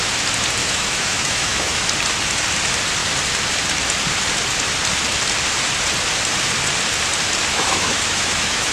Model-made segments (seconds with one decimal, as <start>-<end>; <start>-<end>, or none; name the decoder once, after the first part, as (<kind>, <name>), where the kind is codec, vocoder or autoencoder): 0.6-1.9 (autoencoder, DAC-VAE); 7.5-8.7